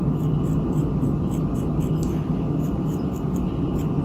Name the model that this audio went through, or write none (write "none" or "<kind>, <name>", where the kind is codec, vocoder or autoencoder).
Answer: none